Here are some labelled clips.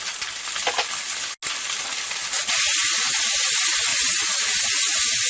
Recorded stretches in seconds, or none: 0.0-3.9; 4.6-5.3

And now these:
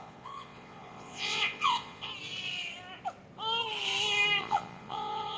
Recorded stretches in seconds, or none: 2.1-4.4